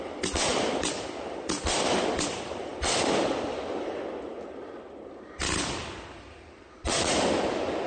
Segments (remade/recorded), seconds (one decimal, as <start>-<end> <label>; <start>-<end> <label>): 0.0-7.9 recorded